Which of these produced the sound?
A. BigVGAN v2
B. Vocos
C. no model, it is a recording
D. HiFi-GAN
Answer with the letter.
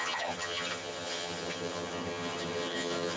D